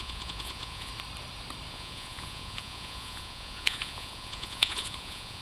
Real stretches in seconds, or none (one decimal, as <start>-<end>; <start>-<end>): 0.9-1.7